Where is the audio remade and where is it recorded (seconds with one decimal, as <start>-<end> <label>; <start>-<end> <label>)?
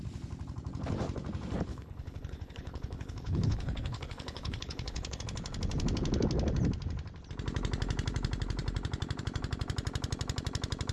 0.0-1.7 recorded; 1.7-5.2 remade; 5.2-10.9 recorded